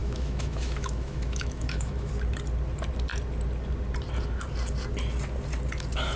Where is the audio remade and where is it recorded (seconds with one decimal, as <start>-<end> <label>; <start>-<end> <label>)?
0.0-2.1 remade; 2.1-6.2 recorded